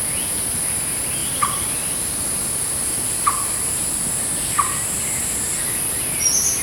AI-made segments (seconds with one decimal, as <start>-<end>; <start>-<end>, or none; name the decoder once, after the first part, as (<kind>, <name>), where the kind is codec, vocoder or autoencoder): none